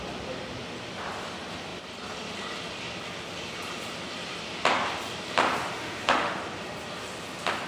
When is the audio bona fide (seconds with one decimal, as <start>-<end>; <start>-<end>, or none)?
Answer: 0.0-5.7; 6.3-7.7

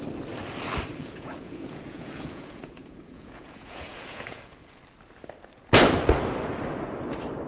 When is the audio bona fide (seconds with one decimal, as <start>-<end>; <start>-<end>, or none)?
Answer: 0.0-0.9; 4.8-7.5

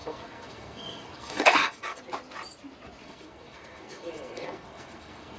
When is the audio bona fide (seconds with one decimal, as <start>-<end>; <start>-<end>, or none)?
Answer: 2.0-3.0

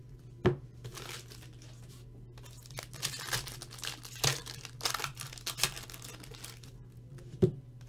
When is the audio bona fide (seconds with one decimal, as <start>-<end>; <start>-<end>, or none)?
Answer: 0.0-7.9

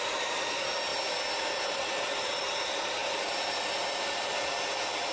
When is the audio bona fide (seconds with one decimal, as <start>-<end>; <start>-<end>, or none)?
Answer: 0.9-1.9; 3.0-5.1

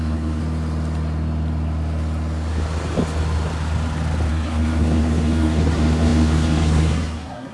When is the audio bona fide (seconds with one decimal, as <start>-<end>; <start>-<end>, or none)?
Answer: 0.4-4.3

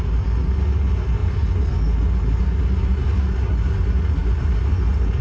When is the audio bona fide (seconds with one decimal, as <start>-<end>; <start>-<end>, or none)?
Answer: 0.0-5.2